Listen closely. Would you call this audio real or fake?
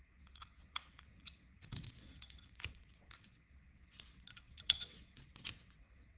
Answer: fake